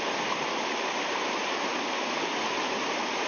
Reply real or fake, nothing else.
real